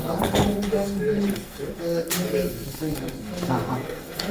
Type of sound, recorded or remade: remade